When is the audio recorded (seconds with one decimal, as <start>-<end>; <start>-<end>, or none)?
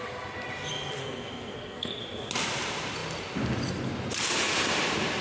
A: 0.0-1.0; 2.0-5.2